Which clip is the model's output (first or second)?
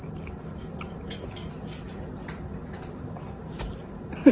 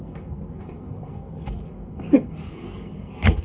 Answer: second